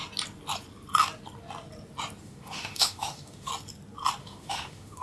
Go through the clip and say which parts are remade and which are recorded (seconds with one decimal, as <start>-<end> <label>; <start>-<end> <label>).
0.0-2.2 recorded; 2.2-3.5 remade; 3.5-4.2 recorded; 4.2-5.0 remade